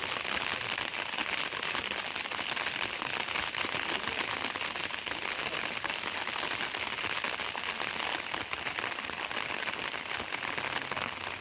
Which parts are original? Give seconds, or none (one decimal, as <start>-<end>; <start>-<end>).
0.0-11.4